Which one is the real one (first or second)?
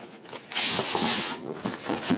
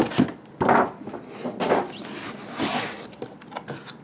second